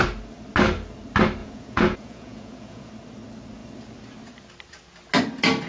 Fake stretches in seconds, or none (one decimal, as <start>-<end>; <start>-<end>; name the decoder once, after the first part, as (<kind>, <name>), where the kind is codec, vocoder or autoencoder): 1.4-2.9 (vocoder, Vocos)